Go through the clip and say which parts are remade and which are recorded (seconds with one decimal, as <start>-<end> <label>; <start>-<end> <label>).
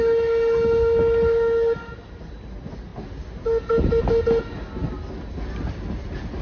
0.0-6.4 recorded